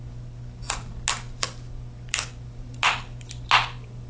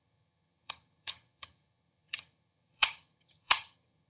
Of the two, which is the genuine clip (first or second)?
first